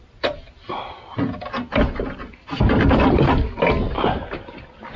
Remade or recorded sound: recorded